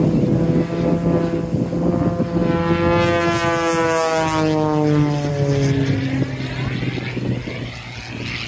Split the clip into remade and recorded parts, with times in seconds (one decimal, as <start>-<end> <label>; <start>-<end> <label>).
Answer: 0.0-8.5 recorded